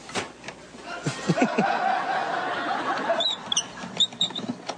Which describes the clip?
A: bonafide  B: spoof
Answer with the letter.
A